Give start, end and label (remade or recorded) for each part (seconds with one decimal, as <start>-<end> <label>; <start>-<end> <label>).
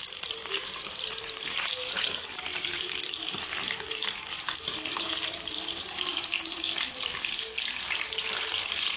0.0-7.5 remade; 7.5-8.5 recorded; 8.5-9.0 remade